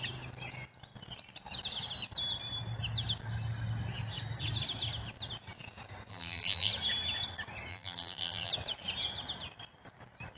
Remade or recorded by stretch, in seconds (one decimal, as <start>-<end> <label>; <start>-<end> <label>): 0.0-6.1 recorded; 6.1-6.7 remade; 6.7-7.7 recorded; 7.7-8.5 remade; 8.5-10.4 recorded